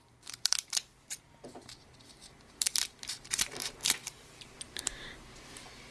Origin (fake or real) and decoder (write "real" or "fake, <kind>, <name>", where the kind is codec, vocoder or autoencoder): fake, vocoder, BigVGAN v2